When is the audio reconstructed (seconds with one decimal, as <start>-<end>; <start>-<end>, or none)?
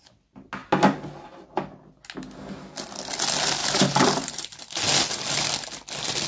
3.6-4.6